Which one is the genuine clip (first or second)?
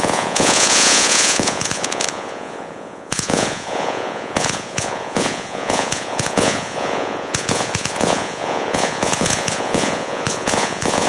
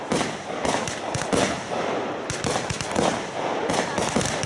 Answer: second